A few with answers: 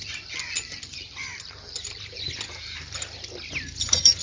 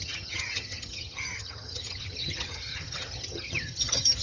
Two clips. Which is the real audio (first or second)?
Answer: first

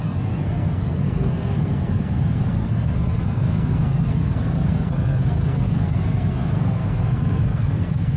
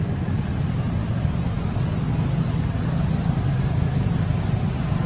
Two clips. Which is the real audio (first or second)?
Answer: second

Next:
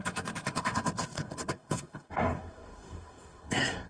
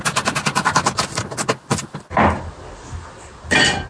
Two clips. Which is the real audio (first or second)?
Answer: second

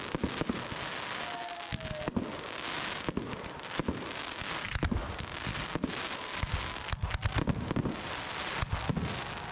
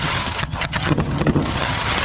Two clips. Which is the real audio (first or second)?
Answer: first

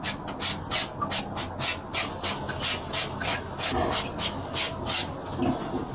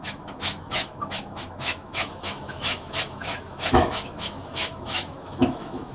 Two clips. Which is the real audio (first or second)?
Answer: first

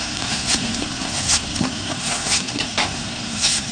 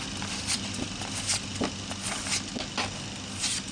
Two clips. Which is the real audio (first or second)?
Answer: second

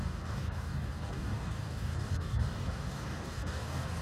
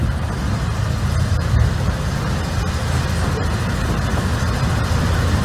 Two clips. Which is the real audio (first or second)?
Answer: second